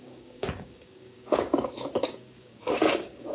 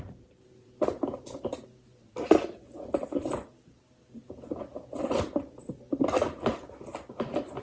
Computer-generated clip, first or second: first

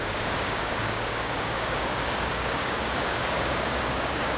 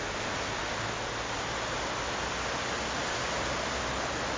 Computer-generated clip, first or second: first